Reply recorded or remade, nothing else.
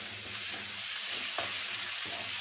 remade